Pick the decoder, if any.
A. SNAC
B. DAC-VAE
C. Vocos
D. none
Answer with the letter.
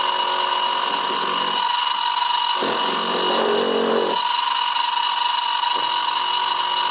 D